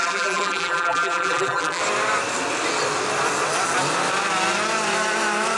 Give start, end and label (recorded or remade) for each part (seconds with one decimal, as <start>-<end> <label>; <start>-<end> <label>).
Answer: 0.0-1.8 remade; 1.8-5.6 recorded